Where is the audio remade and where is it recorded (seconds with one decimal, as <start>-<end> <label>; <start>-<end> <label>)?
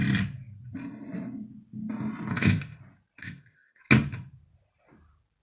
0.0-2.3 recorded; 2.3-2.8 remade; 2.8-3.2 recorded; 3.2-3.8 remade; 3.8-5.4 recorded